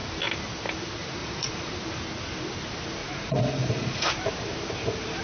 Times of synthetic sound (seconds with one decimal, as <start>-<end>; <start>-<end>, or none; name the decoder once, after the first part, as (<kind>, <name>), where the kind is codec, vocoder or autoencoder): 1.2-1.7 (vocoder, Vocos); 3.0-4.1